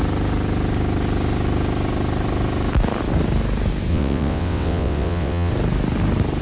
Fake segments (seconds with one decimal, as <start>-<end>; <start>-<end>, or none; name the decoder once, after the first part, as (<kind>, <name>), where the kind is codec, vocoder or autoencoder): 3.9-5.5 (vocoder, WaveNeXt)